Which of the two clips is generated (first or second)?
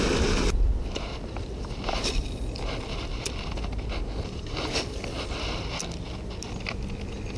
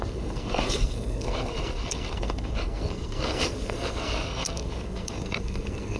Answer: second